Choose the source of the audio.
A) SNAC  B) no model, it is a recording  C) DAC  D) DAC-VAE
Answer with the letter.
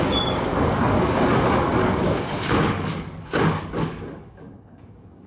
C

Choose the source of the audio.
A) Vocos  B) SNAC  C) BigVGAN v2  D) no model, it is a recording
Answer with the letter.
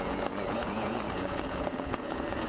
A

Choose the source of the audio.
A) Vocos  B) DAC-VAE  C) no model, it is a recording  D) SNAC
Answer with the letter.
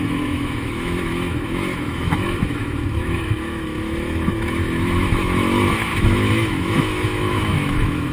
B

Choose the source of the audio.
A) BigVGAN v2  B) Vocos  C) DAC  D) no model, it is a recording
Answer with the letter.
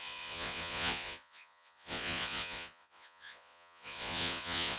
B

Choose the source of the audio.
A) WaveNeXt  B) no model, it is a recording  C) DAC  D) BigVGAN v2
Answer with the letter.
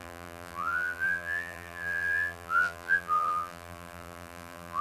D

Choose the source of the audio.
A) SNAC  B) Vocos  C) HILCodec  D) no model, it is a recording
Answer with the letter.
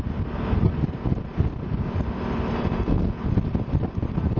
D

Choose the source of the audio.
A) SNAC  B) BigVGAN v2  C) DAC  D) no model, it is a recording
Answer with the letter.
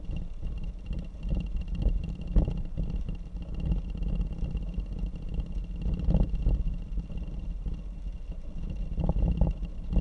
D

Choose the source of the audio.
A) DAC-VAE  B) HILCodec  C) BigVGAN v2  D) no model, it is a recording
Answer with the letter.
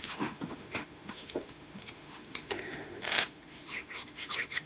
A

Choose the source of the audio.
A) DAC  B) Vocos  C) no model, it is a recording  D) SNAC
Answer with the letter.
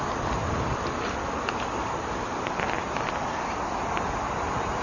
C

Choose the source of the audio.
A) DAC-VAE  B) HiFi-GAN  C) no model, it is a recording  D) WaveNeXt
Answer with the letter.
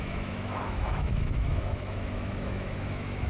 A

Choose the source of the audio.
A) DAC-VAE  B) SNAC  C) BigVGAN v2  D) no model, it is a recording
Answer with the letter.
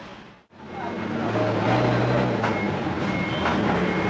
D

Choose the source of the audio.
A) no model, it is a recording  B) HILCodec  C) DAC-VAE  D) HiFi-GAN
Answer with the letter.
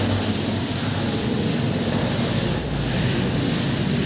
A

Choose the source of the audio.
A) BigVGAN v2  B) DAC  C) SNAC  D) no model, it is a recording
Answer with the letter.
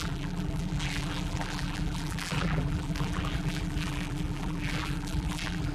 A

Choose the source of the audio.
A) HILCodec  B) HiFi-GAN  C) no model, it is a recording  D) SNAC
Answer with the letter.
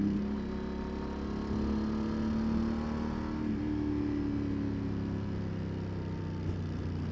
C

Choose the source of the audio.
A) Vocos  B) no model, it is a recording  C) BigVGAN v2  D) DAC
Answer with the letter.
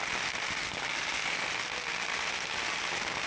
B